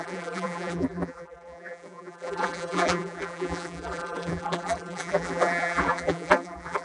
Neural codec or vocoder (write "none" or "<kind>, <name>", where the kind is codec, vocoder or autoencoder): vocoder, BigVGAN v2